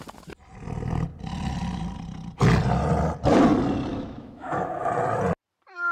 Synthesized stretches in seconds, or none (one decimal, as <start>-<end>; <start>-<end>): 3.9-4.9